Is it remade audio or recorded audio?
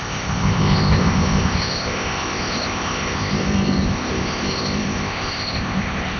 remade